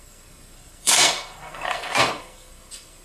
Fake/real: fake